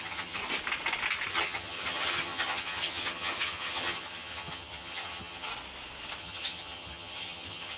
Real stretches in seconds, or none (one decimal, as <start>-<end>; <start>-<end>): 0.4-1.3; 5.5-6.2